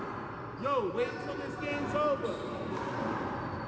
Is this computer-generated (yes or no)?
no